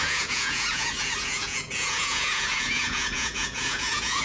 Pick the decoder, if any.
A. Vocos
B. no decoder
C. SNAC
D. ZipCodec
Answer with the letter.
A